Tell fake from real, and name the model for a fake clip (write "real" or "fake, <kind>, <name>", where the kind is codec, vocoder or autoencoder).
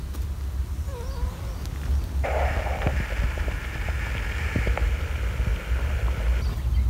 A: real